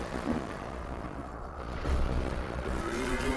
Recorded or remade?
remade